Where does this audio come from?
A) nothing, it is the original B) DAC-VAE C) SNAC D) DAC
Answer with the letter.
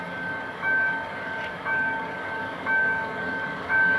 D